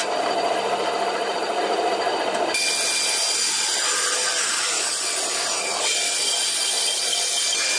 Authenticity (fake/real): real